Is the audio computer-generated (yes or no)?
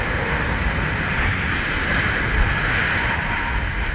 no